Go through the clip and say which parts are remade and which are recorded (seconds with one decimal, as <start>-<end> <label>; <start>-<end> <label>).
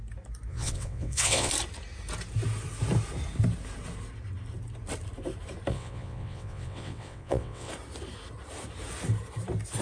0.0-0.5 recorded; 0.5-1.5 remade; 1.5-5.7 recorded; 5.7-7.7 remade; 7.7-9.8 recorded